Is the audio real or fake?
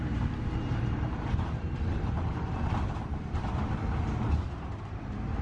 fake